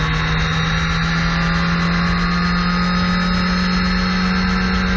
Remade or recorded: recorded